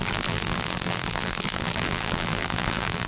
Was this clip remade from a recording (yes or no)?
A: yes